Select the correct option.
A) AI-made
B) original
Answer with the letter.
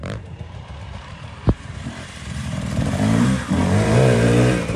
A